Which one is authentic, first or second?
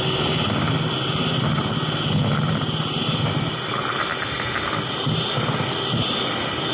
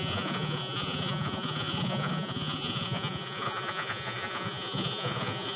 first